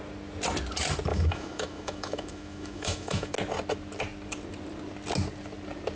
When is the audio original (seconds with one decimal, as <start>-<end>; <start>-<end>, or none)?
0.0-1.1; 3.3-6.0